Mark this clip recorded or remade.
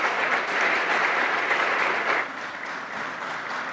remade